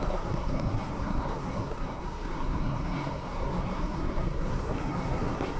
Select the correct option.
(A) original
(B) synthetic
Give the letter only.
B